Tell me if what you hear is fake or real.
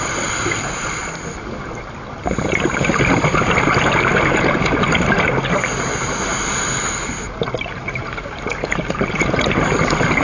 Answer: real